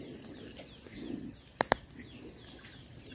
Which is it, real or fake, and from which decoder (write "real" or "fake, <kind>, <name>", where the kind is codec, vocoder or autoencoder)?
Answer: real